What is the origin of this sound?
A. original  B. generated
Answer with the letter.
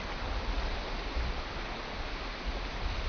A